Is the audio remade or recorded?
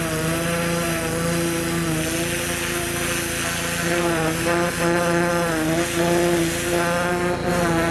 recorded